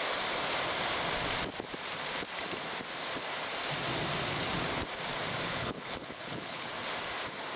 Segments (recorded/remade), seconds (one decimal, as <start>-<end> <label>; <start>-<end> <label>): 0.0-5.5 recorded; 5.5-6.7 remade; 6.7-7.6 recorded